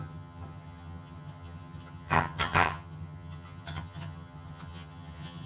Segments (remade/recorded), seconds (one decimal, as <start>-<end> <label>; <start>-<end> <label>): 0.0-5.5 remade